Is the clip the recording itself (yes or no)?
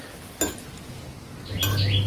yes